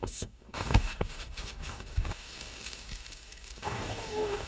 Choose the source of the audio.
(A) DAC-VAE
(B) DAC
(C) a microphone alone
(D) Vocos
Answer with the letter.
B